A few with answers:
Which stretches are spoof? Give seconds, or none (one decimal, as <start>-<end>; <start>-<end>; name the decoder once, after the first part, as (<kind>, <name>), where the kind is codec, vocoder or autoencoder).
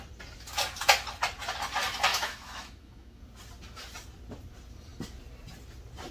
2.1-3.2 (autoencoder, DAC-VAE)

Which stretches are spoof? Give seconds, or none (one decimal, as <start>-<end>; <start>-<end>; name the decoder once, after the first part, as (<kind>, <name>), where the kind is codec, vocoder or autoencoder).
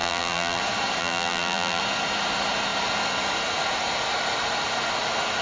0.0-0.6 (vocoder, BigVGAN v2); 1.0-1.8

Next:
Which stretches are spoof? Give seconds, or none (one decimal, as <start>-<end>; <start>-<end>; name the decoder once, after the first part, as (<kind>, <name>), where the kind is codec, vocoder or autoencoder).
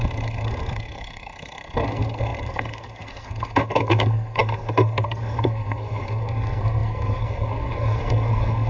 0.0-8.7 (codec, SNAC)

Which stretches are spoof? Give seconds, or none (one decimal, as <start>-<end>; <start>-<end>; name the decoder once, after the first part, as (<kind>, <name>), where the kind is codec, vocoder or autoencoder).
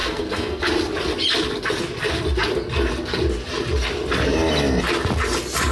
0.0-0.6 (codec, SNAC)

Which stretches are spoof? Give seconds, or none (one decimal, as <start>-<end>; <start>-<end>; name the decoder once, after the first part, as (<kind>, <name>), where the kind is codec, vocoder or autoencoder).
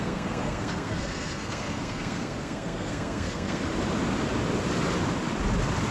0.0-3.6 (codec, SNAC)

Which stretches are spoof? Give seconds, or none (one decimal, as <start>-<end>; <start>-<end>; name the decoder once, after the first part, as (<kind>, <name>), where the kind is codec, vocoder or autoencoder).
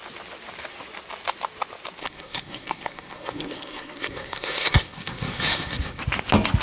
2.0-6.0 (codec, SNAC)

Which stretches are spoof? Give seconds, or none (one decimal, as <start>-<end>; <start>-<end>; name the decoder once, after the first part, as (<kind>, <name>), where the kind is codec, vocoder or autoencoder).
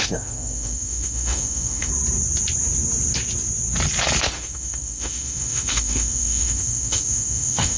0.0-1.9 (autoencoder, DAC-VAE); 4.2-7.8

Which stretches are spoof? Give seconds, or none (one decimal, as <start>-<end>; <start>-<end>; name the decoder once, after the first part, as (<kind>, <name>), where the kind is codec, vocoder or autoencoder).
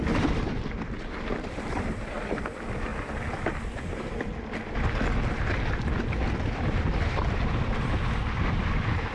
0.0-9.1 (vocoder, BigVGAN v2)